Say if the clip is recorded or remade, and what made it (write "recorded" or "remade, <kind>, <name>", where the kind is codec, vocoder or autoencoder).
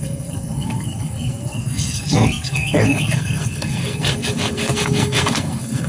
remade, codec, SNAC